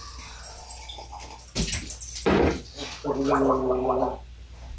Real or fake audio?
real